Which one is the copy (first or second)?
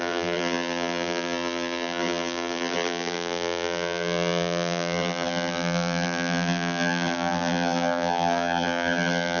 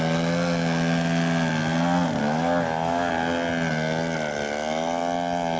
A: first